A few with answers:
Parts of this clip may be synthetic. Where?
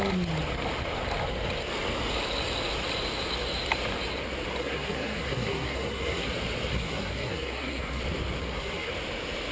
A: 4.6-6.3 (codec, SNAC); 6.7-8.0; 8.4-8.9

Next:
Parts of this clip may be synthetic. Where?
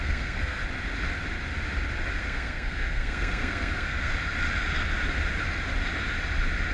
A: 0.0-0.6 (codec, SNAC); 2.2-4.1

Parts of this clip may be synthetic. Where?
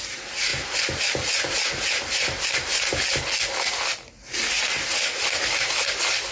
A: none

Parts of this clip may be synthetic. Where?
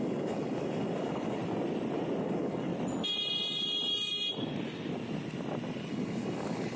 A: 0.0-1.4 (codec, DAC); 2.2-2.7; 5.9-6.8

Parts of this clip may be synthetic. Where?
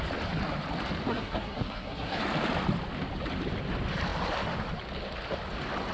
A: 1.1-2.2 (codec, SNAC)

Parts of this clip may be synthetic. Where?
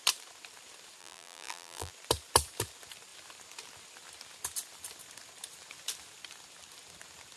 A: 1.0-1.9 (vocoder, BigVGAN v2)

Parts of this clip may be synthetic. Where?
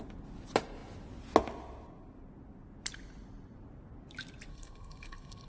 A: 4.5-5.5 (codec, SNAC)